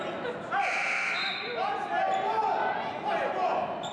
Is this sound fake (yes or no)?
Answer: no